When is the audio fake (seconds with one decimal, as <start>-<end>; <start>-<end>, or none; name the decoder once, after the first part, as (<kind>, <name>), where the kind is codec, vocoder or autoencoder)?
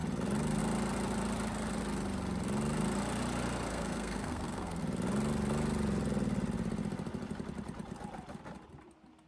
3.7-4.8 (codec, SNAC)